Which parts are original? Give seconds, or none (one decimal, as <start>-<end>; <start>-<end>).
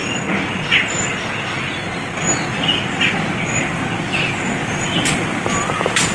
0.0-4.6; 5.2-6.1